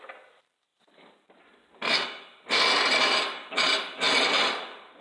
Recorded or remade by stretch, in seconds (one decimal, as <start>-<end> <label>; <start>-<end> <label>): 0.0-5.0 recorded